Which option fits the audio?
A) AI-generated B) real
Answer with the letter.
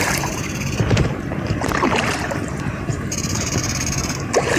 A